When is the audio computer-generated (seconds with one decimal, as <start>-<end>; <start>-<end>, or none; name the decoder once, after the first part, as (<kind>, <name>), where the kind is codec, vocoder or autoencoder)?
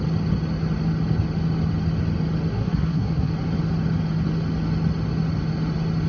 2.5-3.3 (codec, SNAC)